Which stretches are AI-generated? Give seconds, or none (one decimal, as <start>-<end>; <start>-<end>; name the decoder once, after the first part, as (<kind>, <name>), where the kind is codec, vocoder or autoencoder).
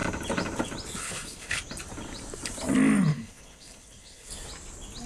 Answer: 1.0-1.6 (codec, HILCodec); 3.1-4.3